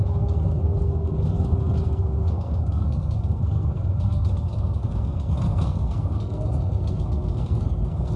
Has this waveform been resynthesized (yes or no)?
yes